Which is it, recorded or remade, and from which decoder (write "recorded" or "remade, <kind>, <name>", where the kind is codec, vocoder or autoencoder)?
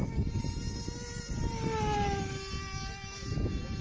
recorded